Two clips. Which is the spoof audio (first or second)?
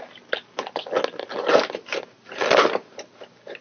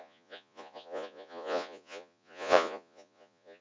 second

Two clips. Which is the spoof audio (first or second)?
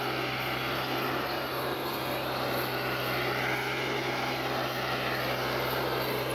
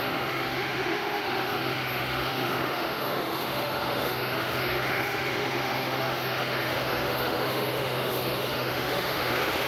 second